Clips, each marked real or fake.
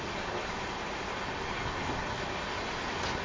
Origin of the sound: real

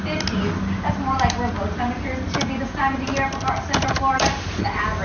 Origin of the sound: real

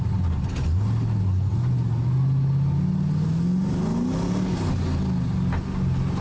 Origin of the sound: real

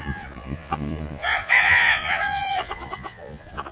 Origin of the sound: fake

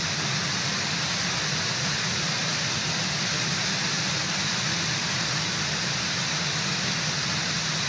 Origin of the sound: real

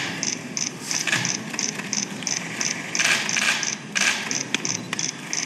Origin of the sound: real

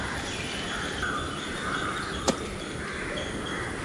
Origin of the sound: real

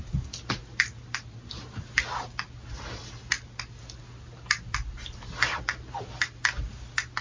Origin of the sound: real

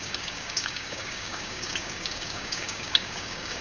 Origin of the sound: fake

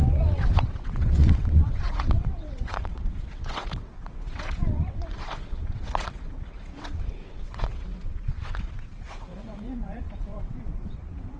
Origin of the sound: fake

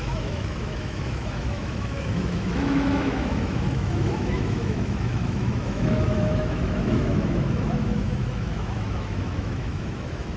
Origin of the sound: fake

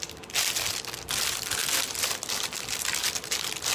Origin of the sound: fake